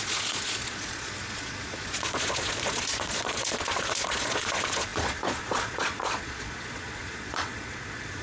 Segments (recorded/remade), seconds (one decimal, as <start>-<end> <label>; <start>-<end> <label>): 0.0-8.2 remade

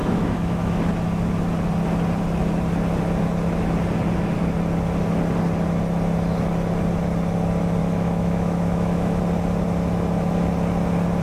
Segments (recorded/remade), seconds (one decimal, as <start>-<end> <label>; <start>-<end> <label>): 0.0-0.8 remade; 0.8-7.8 recorded; 7.8-9.2 remade; 9.2-11.2 recorded

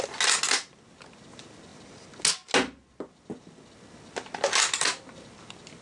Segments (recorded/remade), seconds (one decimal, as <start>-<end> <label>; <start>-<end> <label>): 0.0-5.8 recorded

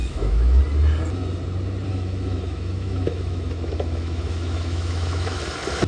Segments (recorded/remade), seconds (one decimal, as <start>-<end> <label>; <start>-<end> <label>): 0.0-0.6 remade; 0.6-1.9 recorded; 1.9-5.4 remade; 5.4-5.9 recorded

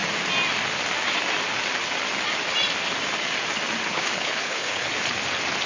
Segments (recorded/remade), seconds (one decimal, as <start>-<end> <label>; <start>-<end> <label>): 0.0-3.9 recorded; 3.9-4.9 remade; 4.9-5.7 recorded

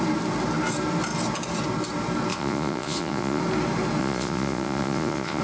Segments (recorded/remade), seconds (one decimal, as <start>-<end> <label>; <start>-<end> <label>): 0.0-2.3 recorded; 2.3-3.4 remade; 3.4-4.0 recorded; 4.0-5.4 remade